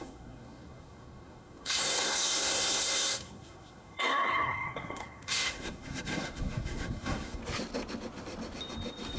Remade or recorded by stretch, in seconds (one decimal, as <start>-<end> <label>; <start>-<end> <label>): 0.0-7.4 remade; 7.4-9.2 recorded